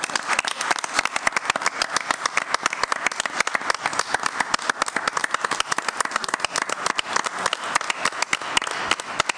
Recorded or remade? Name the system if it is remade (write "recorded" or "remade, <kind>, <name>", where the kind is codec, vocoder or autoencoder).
recorded